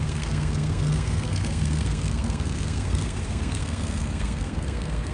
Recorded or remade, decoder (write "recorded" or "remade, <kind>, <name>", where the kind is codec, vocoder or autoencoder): remade, codec, SNAC